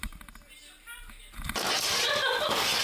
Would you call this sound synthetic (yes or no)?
no